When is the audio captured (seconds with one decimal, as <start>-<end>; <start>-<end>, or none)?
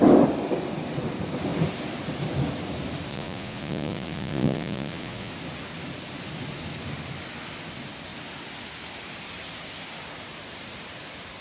0.0-3.1; 5.3-11.4